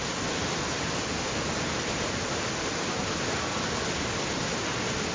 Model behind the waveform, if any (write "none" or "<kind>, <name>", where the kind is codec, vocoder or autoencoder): none